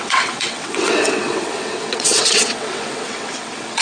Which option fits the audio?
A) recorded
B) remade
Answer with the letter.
B